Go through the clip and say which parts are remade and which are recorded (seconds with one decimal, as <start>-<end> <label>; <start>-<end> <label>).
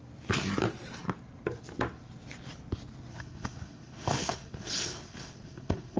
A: 0.0-3.1 recorded; 3.1-6.0 remade